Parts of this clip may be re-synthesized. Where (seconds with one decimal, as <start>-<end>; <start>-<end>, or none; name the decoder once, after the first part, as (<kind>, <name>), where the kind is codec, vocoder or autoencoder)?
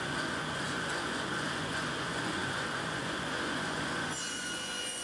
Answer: 0.0-5.0 (vocoder, Vocos)